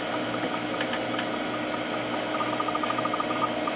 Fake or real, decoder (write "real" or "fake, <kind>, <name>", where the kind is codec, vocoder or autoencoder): real